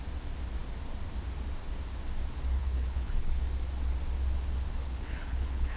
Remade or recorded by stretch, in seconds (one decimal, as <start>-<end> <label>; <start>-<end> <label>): 0.0-2.6 recorded; 2.6-3.4 remade; 3.4-4.8 recorded; 4.8-5.8 remade